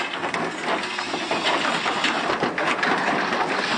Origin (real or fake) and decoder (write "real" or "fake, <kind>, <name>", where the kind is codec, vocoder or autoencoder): real